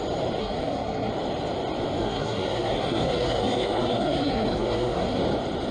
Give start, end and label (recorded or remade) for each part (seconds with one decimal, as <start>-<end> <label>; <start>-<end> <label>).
0.0-0.4 recorded; 0.4-1.1 remade; 1.1-2.0 recorded; 2.0-5.2 remade; 5.2-5.7 recorded